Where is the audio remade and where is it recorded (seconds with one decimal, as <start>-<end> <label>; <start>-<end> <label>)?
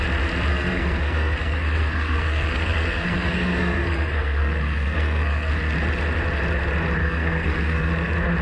0.0-0.5 recorded; 0.5-5.5 remade; 5.5-7.0 recorded; 7.0-7.9 remade; 7.9-8.4 recorded